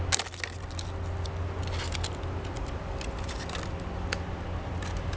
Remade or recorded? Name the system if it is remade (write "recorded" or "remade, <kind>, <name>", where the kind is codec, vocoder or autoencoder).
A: recorded